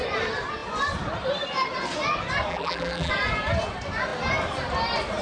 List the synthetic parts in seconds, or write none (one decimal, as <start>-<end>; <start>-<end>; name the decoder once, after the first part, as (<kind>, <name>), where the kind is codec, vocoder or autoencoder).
2.5-3.1 (vocoder, BigVGAN v2)